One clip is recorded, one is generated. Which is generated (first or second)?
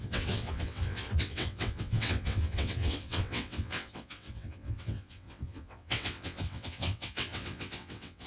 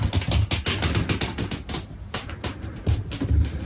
first